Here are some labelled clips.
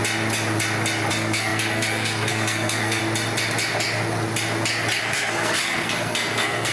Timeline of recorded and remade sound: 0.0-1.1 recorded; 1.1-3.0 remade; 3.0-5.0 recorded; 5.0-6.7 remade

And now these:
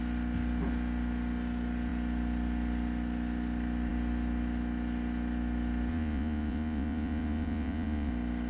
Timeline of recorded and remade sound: 0.0-5.9 recorded; 5.9-8.1 remade; 8.1-8.5 recorded

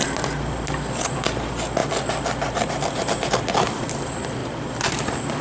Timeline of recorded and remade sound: 0.0-5.4 recorded

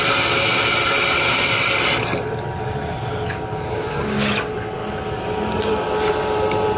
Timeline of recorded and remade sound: 0.0-6.8 recorded

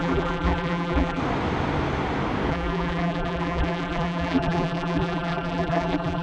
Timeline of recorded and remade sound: 0.0-1.2 remade; 1.2-2.5 recorded; 2.5-6.2 remade

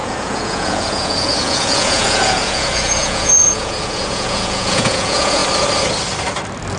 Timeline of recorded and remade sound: 0.0-5.4 remade; 5.4-6.8 recorded